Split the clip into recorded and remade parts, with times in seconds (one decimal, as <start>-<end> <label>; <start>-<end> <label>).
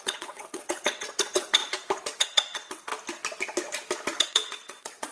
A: 0.0-1.6 remade; 1.6-2.2 recorded; 2.2-2.9 remade; 2.9-4.2 recorded; 4.2-5.1 remade